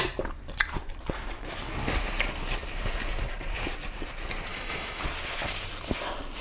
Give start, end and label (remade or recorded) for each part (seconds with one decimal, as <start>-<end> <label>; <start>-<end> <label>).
0.0-4.5 recorded; 4.5-5.0 remade; 5.0-6.4 recorded